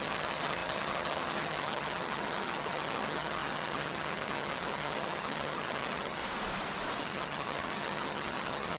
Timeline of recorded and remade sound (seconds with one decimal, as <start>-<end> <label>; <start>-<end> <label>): 0.0-6.2 remade; 6.2-7.0 recorded; 7.0-8.8 remade